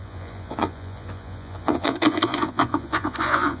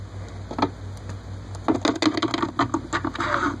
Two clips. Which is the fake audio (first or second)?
first